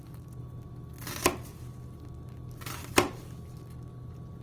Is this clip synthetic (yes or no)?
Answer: no